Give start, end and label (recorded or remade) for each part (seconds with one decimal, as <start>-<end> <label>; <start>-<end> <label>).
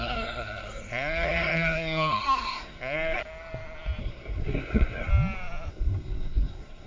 0.0-3.2 remade; 3.2-4.0 recorded; 4.0-5.1 remade; 5.1-5.7 recorded; 5.7-6.9 remade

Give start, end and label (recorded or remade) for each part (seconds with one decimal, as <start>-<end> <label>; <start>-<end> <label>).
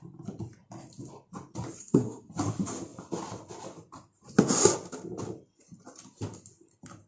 0.0-1.8 recorded; 1.8-2.3 remade; 2.3-7.1 recorded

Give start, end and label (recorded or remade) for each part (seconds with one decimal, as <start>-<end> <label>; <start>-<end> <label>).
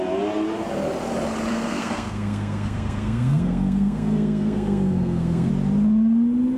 0.0-1.5 recorded; 1.5-5.5 remade; 5.5-6.6 recorded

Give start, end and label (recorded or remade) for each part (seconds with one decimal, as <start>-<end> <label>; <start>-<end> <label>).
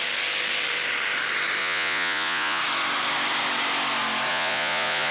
0.0-1.6 recorded; 1.6-2.6 remade; 2.6-4.3 recorded; 4.3-5.1 remade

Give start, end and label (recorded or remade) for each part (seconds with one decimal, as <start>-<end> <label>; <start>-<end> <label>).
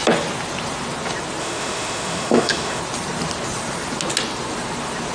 0.0-1.4 recorded; 1.4-2.8 remade; 2.8-5.1 recorded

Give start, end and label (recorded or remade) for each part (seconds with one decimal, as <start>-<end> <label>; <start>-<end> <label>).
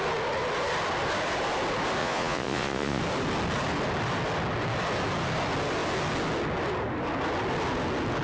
0.0-2.0 recorded; 2.0-3.0 remade; 3.0-8.2 recorded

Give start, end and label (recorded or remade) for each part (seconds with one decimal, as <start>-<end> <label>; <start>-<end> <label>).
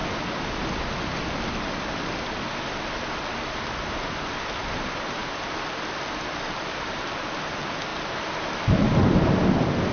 0.0-9.9 recorded